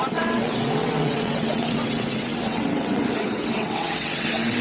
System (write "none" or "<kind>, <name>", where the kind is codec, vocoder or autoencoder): vocoder, WaveNeXt